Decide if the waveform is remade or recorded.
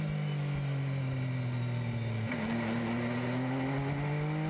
recorded